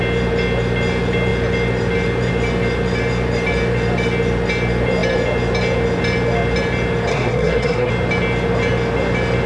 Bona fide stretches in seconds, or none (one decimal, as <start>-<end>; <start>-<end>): 0.0-7.1; 7.9-9.5